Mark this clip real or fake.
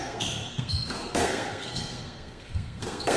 fake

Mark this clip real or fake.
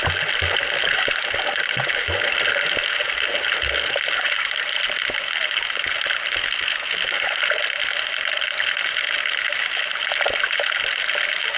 real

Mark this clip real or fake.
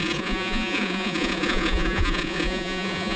fake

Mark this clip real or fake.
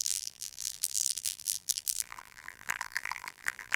fake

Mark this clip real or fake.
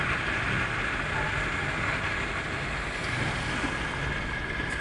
real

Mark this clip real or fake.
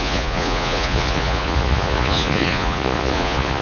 fake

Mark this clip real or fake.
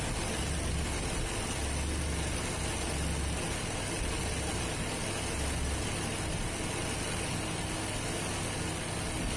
real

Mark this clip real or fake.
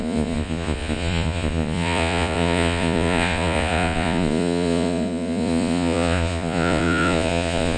fake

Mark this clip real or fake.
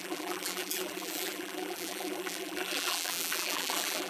fake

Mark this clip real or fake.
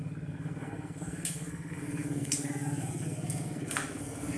fake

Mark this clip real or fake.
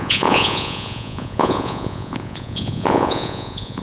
fake